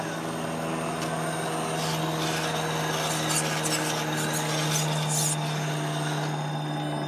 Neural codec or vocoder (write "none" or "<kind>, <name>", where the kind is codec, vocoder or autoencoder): none